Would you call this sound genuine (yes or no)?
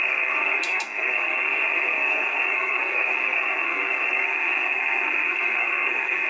no